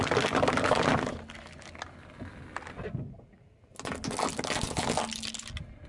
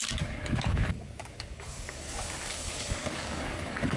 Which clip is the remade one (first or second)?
second